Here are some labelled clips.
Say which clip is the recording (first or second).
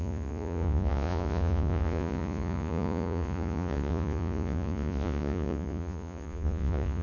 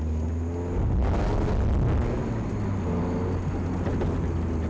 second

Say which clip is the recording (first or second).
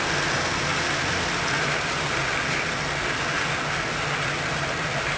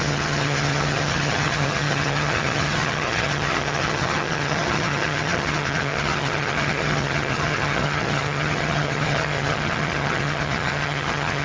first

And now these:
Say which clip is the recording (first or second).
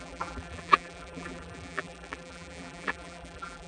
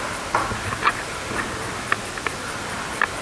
second